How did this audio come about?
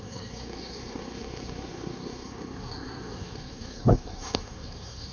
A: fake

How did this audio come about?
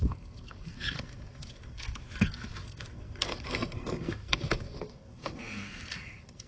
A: fake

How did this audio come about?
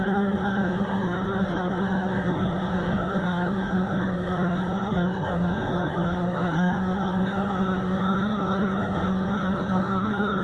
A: fake